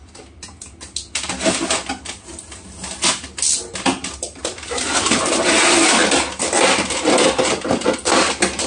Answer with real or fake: real